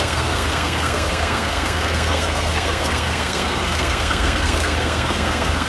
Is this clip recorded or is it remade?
remade